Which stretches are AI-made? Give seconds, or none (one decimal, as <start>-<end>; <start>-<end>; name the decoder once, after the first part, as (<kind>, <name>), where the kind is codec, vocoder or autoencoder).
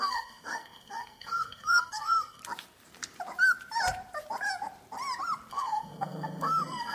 0.0-2.4 (codec, SNAC); 5.5-6.9